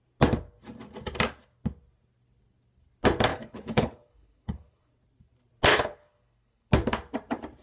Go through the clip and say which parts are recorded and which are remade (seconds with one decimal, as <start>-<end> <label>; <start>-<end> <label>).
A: 0.0-3.3 recorded; 3.3-4.9 remade; 4.9-5.7 recorded; 5.7-6.7 remade; 6.7-7.6 recorded